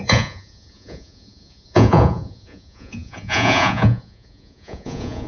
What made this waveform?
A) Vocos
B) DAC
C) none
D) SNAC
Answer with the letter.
A